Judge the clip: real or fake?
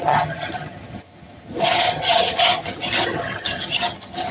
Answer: fake